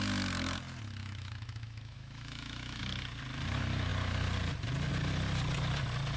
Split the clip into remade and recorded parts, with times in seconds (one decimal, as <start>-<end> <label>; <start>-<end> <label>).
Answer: 0.0-1.0 recorded; 1.0-2.8 remade; 2.8-6.2 recorded